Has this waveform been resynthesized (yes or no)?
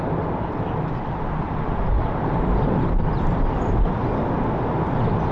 no